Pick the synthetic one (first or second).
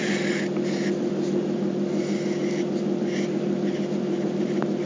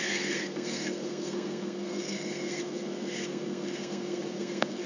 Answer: second